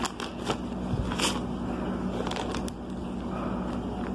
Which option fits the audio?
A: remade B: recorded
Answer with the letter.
B